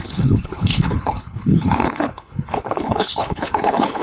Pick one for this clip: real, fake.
fake